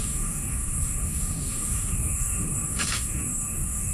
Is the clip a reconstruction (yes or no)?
yes